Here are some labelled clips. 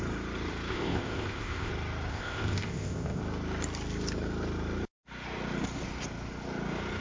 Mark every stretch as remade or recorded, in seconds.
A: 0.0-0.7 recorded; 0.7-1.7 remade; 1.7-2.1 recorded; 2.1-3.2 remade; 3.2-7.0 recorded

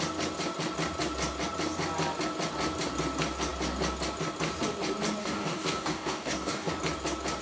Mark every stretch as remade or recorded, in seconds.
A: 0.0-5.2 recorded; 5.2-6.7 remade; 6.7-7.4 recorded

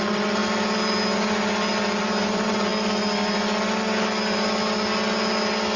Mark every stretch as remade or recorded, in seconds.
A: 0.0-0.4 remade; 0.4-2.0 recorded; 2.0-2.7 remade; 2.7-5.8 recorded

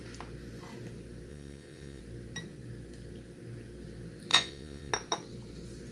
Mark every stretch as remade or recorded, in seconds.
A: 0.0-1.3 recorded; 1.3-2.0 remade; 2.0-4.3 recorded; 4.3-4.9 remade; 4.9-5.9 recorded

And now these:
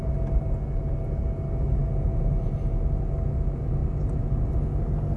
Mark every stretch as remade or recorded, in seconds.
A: 0.0-5.2 recorded

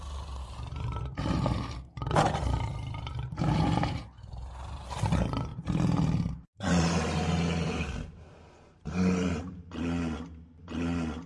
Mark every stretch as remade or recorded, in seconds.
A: 0.0-0.7 recorded; 0.7-4.5 remade; 4.5-5.5 recorded; 5.5-9.6 remade; 9.6-11.3 recorded